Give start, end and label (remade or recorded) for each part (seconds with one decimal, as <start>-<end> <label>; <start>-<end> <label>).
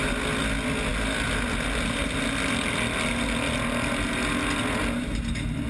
0.0-5.7 recorded